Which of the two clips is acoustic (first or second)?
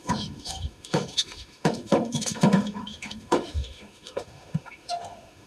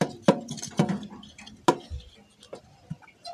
second